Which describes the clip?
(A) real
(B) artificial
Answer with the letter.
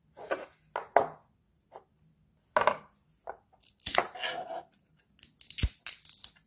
A